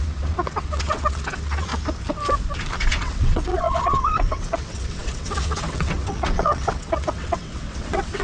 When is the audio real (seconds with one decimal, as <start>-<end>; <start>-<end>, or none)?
1.7-2.8